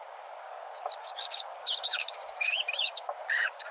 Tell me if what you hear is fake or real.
fake